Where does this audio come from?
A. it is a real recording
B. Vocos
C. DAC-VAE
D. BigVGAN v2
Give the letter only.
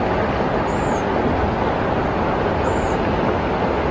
A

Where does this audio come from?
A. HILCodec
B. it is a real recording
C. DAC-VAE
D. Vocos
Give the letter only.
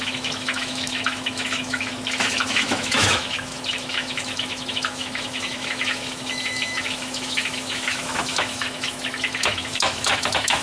C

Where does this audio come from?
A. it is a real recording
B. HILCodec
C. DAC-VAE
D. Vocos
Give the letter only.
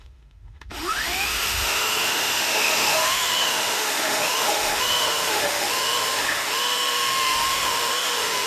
C